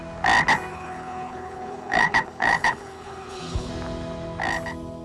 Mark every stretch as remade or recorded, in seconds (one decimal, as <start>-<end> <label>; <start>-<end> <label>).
0.0-0.7 recorded; 0.7-3.7 remade; 3.7-5.0 recorded